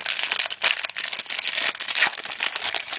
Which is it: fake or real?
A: real